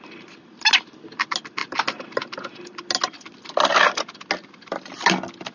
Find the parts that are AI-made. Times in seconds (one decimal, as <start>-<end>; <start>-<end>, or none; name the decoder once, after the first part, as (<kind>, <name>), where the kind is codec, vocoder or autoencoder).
none